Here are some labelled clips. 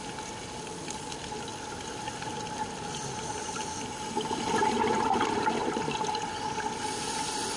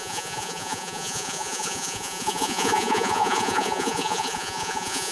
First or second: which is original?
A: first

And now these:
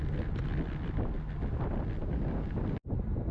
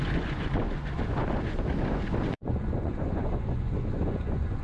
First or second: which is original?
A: first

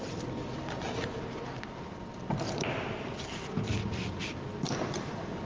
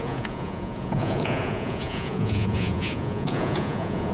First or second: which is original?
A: first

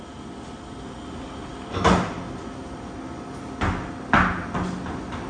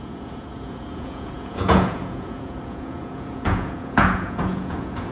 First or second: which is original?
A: first